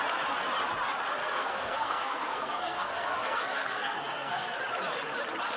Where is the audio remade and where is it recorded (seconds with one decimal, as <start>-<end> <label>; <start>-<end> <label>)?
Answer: 0.0-1.2 recorded; 1.2-4.6 remade; 4.6-5.6 recorded